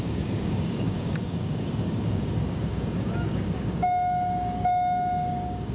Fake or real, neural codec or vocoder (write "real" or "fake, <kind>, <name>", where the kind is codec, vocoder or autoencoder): fake, codec, DAC